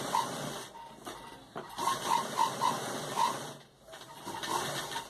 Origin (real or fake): fake